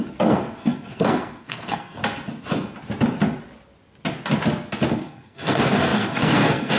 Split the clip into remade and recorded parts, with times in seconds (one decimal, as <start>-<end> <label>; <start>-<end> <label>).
0.0-2.0 remade; 2.0-4.9 recorded; 4.9-6.8 remade